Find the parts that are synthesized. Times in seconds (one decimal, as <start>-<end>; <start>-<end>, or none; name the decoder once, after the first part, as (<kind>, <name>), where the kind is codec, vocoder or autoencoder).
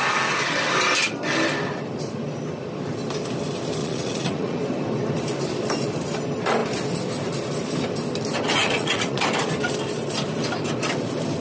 3.8-4.6 (vocoder, Vocos); 8.6-9.2